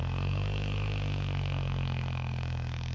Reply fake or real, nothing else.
fake